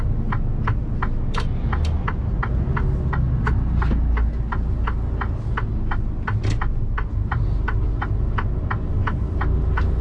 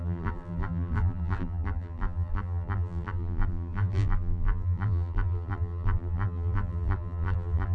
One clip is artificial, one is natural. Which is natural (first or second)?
first